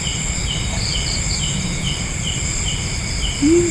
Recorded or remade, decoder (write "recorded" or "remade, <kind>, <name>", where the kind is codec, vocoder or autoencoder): remade, vocoder, BigVGAN v2